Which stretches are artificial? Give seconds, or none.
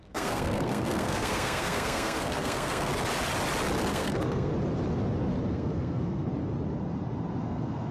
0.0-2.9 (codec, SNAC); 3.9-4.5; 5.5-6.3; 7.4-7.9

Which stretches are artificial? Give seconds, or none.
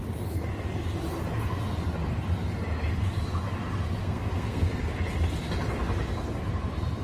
4.0-4.7 (codec, SNAC)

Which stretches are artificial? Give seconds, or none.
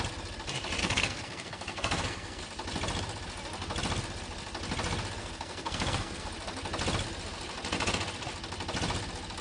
0.8-2.4 (codec, SNAC); 5.2-6.3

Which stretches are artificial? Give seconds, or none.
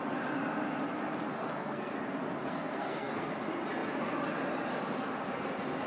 1.4-1.9 (codec, SNAC); 2.4-3.3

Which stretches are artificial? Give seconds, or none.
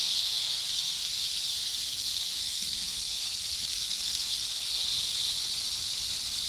0.0-4.4 (codec, SNAC)